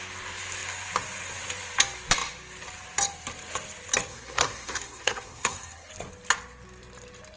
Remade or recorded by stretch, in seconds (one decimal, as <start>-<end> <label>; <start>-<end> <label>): 0.0-4.1 recorded; 4.1-5.9 remade; 5.9-7.4 recorded